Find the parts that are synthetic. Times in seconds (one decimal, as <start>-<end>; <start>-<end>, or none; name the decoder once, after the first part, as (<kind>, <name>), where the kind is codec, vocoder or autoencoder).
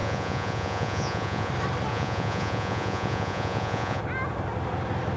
0.0-1.5 (vocoder, Vocos); 1.9-4.0